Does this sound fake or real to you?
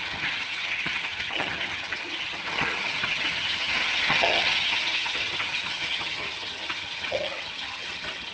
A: fake